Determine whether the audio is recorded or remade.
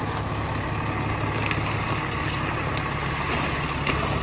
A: recorded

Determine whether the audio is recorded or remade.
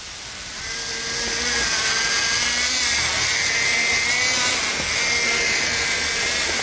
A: recorded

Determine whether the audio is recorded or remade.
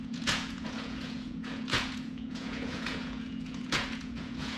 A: remade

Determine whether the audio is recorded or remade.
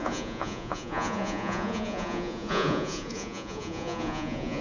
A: remade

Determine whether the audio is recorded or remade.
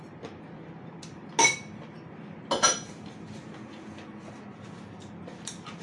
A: recorded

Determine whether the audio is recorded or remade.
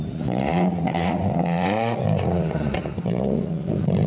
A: remade